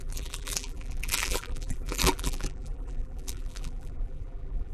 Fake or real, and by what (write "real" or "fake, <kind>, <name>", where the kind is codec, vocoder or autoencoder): fake, vocoder, BigVGAN v2